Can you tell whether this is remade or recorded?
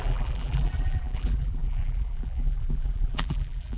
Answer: remade